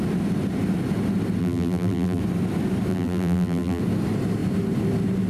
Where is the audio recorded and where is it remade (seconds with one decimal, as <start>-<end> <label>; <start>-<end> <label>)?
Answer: 0.0-1.4 recorded; 1.4-2.2 remade; 2.2-2.9 recorded; 2.9-3.8 remade; 3.8-5.3 recorded